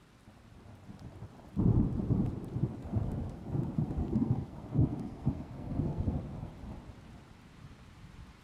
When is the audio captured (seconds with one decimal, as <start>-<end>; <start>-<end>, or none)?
0.0-2.8; 6.5-8.4